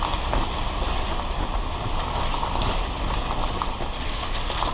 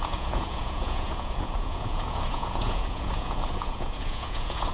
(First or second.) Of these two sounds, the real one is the first